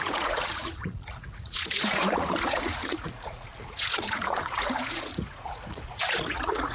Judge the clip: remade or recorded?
remade